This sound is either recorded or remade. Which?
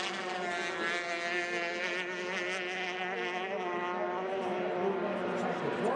recorded